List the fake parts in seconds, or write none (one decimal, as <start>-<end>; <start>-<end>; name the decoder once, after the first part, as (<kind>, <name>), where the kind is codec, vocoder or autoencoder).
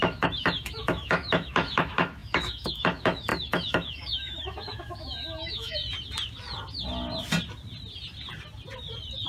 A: 0.0-5.8 (autoencoder, DAC-VAE)